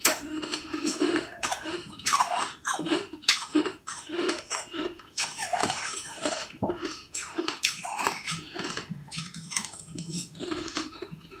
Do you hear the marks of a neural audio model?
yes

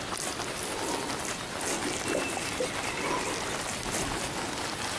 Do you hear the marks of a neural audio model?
no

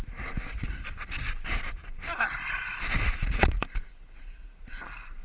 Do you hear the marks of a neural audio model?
no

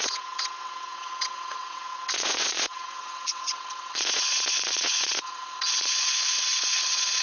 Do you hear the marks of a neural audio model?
yes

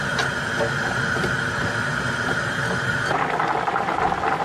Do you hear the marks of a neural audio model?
no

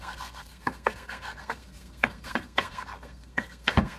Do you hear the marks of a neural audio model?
yes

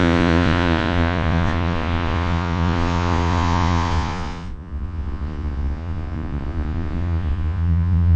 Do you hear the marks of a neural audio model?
yes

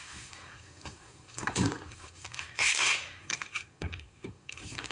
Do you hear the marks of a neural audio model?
yes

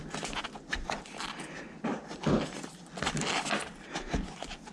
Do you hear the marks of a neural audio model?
no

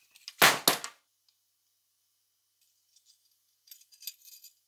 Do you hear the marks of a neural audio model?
no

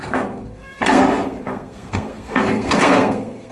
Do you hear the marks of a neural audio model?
yes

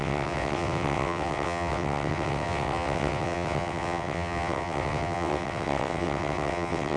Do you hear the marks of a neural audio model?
yes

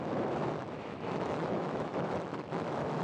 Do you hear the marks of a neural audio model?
yes